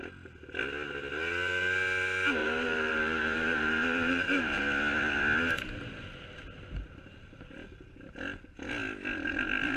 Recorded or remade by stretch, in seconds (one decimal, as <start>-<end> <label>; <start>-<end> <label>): 0.0-2.4 recorded; 2.4-4.6 remade; 4.6-9.8 recorded